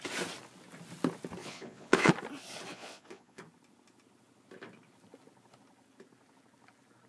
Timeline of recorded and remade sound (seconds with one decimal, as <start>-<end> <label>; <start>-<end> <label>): 0.0-1.4 recorded; 1.4-2.1 remade; 2.1-2.7 recorded; 2.7-3.4 remade; 3.4-7.1 recorded